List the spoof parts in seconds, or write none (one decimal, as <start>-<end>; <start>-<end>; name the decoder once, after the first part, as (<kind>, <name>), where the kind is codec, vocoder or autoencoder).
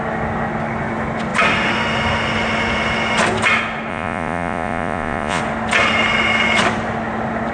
3.9-5.4 (vocoder, Vocos)